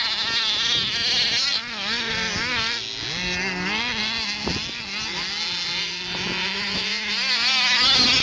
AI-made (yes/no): no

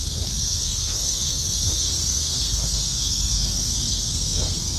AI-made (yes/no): yes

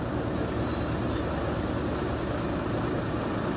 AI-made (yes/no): no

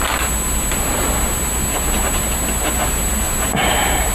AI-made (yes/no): no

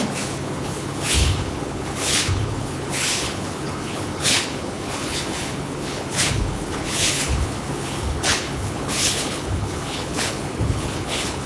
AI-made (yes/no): yes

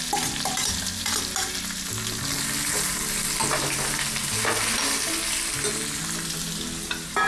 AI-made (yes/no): no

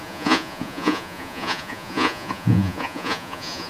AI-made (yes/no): yes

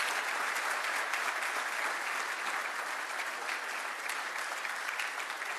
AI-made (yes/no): no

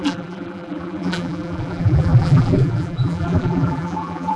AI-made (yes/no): yes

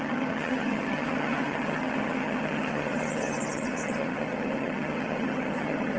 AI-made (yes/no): yes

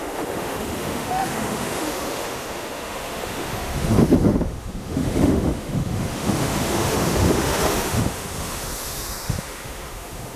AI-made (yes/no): yes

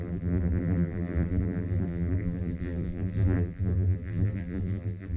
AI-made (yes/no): yes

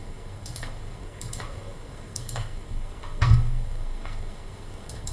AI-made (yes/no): yes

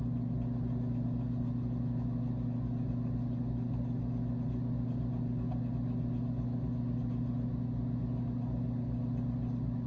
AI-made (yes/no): no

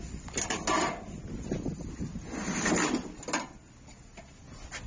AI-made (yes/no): no